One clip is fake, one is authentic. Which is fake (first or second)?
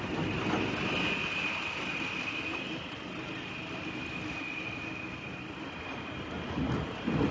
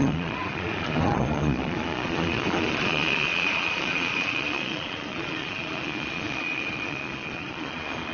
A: second